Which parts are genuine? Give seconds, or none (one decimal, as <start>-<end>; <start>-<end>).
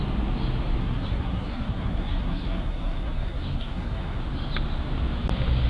0.0-0.8; 4.2-5.7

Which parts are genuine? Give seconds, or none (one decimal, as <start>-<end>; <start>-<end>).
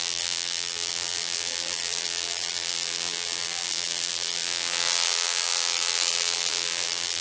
none